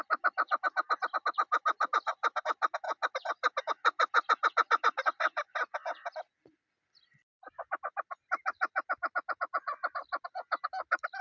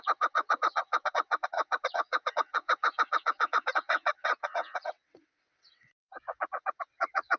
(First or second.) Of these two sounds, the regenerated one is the second